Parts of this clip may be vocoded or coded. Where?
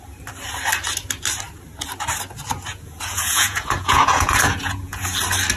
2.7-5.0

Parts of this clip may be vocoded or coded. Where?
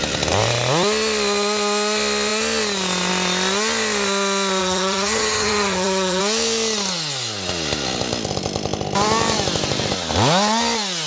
4.6-6.2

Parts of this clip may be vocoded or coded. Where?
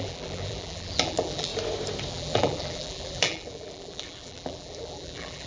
0.0-1.5; 2.1-5.5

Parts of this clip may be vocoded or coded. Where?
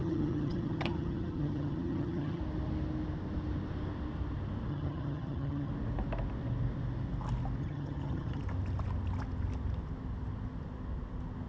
0.0-2.4; 4.7-5.7; 7.6-8.4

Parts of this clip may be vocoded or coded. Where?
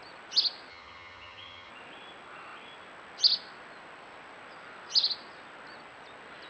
0.7-1.7